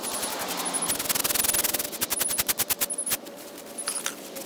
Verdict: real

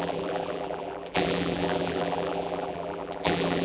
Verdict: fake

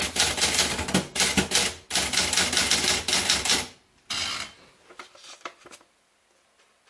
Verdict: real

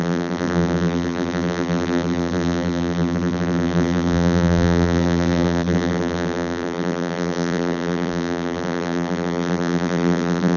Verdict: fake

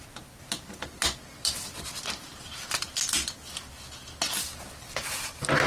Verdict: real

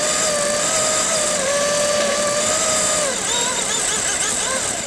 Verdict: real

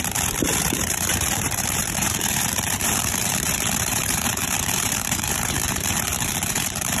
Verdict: fake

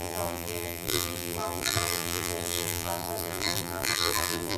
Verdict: fake